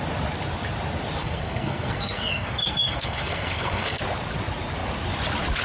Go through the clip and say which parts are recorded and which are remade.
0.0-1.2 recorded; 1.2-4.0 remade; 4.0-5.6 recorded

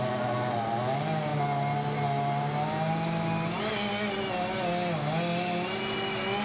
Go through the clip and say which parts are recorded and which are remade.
0.0-6.4 recorded